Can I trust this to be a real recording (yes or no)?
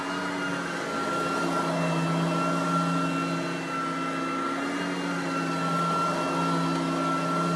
yes